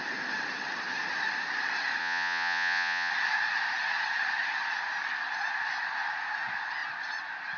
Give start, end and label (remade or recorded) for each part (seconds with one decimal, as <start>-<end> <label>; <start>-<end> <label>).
0.0-2.0 recorded; 2.0-3.1 remade; 3.1-7.6 recorded